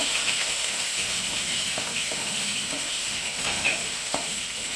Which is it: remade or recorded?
remade